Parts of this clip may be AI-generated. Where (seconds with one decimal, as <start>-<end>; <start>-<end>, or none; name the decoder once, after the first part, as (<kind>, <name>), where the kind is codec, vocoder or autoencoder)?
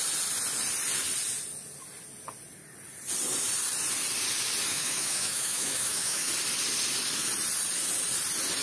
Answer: 4.7-6.3 (autoencoder, DAC-VAE)